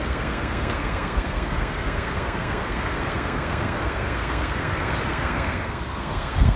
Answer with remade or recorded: remade